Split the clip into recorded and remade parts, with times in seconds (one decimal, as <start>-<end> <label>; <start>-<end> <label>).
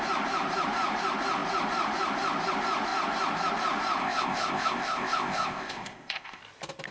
0.0-4.0 recorded; 4.0-6.4 remade; 6.4-6.9 recorded